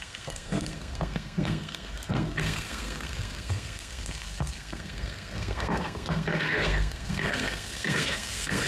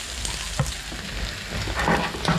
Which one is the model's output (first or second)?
first